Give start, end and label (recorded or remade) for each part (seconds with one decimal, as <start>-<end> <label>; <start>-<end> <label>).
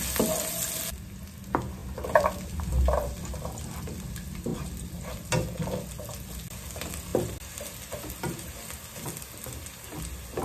0.0-4.5 recorded; 4.5-5.3 remade; 5.3-10.4 recorded